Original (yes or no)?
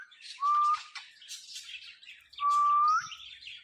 yes